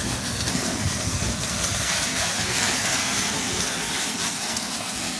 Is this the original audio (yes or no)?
no